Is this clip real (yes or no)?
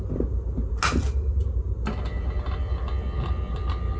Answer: yes